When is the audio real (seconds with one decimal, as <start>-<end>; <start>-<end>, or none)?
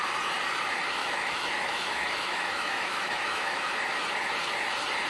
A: 0.0-1.0; 3.7-5.1